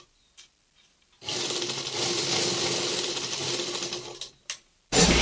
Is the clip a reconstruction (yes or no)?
no